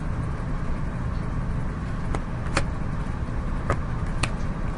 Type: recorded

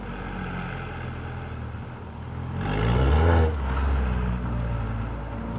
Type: recorded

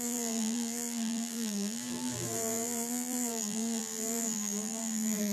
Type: remade